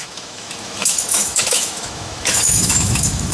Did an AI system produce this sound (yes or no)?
yes